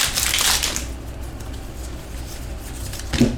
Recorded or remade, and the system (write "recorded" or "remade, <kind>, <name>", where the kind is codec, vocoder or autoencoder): recorded